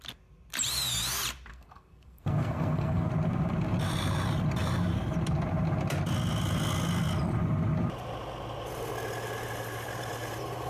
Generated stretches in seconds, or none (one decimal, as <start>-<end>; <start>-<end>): 1.5-3.1